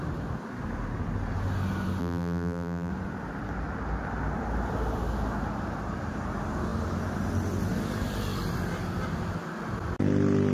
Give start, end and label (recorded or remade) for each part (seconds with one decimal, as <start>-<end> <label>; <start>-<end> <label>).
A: 0.0-2.0 recorded; 2.0-2.9 remade; 2.9-10.5 recorded